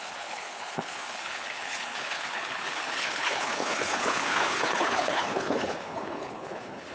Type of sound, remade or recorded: remade